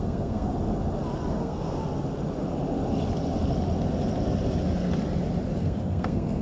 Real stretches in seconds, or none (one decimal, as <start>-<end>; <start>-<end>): 0.5-1.3; 1.8-5.6